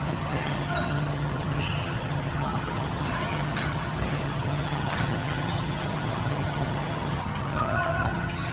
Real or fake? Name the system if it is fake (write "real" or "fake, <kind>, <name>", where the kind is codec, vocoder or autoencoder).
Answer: fake, vocoder, HiFi-GAN